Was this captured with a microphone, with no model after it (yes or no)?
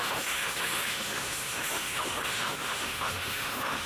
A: no